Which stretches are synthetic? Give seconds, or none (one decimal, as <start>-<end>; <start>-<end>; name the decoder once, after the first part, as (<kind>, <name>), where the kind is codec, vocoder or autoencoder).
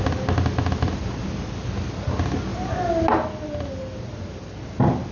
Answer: none